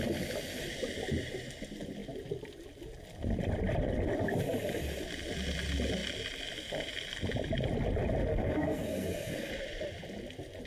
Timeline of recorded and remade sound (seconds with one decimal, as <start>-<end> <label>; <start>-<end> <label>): 0.0-8.3 recorded; 8.3-9.5 remade; 9.5-10.7 recorded